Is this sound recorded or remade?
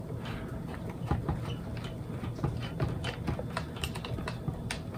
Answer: recorded